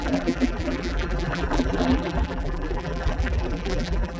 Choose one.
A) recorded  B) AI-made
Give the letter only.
B